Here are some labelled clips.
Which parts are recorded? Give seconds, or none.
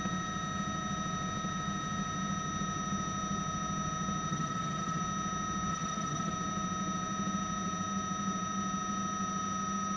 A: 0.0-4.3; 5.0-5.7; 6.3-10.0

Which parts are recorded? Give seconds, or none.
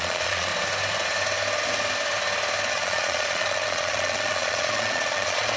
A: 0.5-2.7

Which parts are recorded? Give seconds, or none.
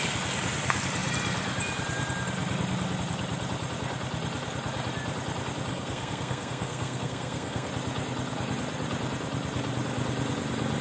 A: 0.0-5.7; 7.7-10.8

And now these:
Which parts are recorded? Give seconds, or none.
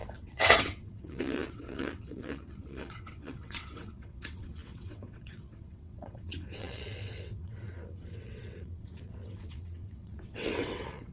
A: none